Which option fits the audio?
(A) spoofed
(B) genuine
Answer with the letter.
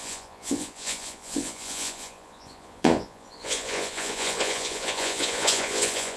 A